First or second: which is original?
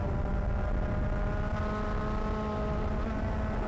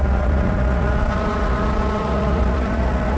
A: first